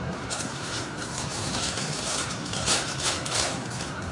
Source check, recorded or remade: remade